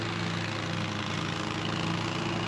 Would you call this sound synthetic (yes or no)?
no